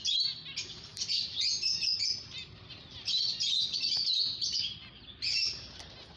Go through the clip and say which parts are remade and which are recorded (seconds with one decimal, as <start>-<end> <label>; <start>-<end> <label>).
0.0-6.2 recorded